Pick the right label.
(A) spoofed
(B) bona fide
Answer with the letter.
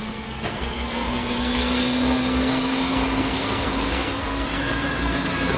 A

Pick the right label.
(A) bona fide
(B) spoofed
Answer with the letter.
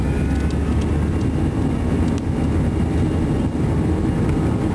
A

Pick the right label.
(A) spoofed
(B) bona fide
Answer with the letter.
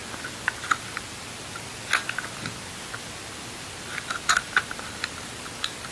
B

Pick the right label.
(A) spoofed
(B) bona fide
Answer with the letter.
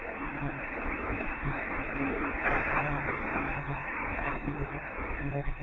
A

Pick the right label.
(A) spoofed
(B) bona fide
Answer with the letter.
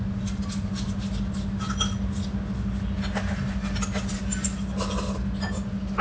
B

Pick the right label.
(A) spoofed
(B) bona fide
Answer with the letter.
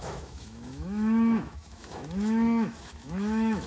A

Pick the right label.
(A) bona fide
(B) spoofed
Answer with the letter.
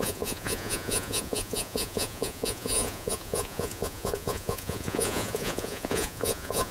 B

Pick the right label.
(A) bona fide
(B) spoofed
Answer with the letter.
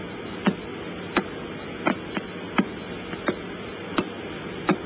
A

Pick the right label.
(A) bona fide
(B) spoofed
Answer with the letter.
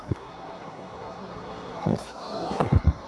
B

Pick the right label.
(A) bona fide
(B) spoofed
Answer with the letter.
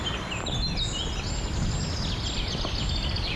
A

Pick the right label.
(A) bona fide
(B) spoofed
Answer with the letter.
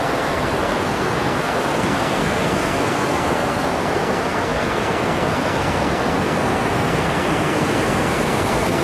B